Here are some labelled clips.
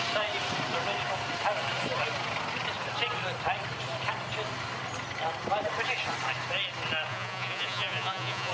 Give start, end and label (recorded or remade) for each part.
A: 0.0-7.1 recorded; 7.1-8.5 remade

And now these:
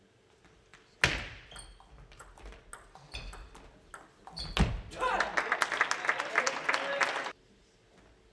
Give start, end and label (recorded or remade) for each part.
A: 0.0-8.3 recorded

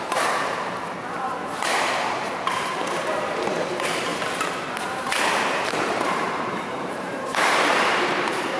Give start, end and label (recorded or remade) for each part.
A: 0.0-4.1 remade; 4.1-4.8 recorded; 4.8-8.6 remade

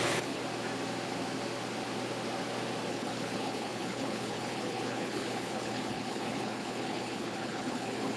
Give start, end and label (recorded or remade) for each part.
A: 0.0-0.4 remade; 0.4-2.9 recorded; 2.9-8.2 remade